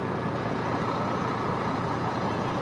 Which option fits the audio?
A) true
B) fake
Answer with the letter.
B